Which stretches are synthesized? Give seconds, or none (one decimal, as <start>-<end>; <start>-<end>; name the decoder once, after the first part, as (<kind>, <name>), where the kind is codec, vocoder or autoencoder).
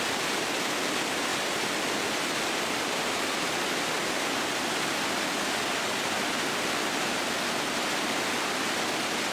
none